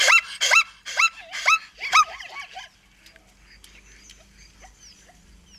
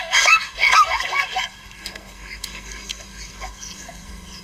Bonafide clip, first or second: first